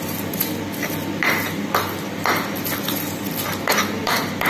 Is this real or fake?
real